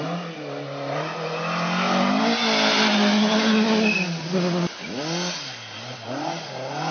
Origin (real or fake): real